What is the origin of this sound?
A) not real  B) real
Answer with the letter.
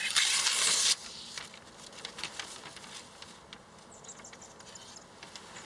B